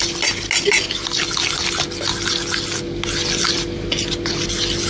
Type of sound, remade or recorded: recorded